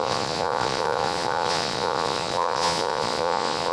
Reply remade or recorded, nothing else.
remade